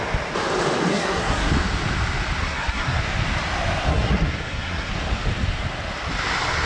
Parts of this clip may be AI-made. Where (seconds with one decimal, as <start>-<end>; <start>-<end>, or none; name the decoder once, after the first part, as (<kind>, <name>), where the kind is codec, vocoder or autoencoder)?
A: 0.9-1.5 (codec, SNAC); 2.4-3.0; 3.9-4.9